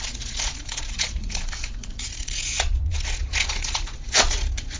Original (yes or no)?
no